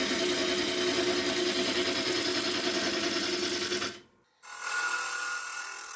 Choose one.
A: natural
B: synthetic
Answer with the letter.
A